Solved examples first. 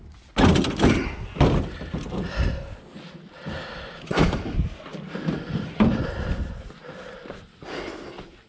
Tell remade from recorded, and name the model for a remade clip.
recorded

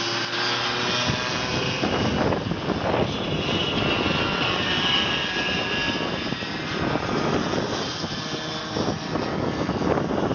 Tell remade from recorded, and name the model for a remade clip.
recorded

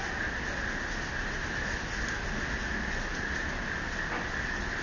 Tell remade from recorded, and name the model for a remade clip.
recorded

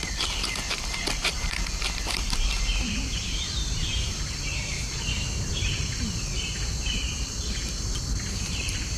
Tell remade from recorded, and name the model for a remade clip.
remade, vocoder, BigVGAN v2